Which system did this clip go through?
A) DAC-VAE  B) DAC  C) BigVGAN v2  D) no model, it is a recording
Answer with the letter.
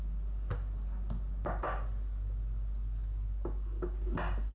D